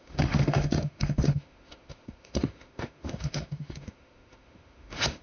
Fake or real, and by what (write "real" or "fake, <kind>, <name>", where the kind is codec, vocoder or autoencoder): fake, autoencoder, DAC-VAE